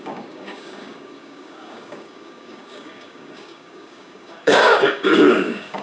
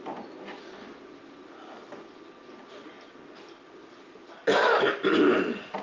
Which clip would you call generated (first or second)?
first